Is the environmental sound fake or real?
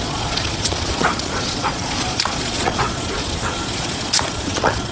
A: fake